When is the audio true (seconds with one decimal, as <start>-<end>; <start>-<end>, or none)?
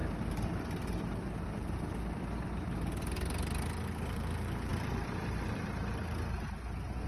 0.0-7.1